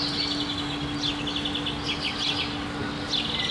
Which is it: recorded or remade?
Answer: recorded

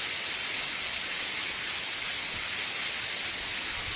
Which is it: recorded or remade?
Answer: recorded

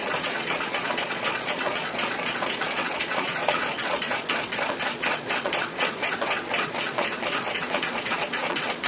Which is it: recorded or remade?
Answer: remade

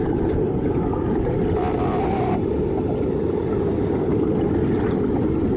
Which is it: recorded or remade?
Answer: recorded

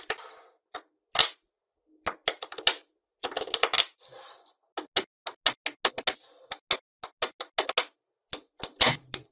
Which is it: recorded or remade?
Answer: recorded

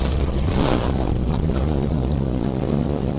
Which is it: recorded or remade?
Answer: remade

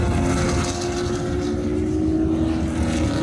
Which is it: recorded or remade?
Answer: recorded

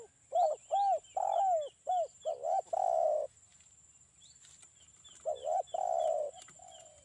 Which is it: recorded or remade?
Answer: recorded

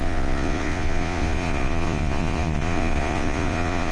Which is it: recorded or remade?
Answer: remade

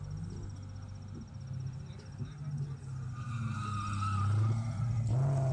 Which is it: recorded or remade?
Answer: recorded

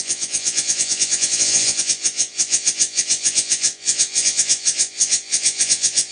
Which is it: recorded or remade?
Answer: remade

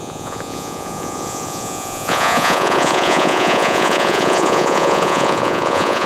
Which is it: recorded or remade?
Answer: remade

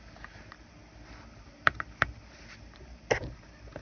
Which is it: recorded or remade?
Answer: recorded